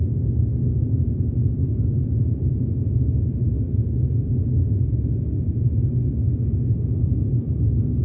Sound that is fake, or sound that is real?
real